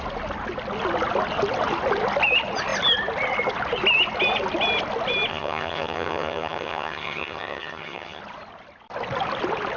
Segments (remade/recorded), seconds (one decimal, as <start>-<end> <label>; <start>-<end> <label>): 0.0-5.3 recorded; 5.3-8.2 remade; 8.2-9.8 recorded